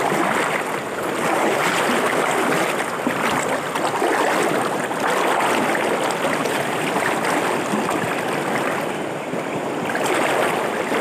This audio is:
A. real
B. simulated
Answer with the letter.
A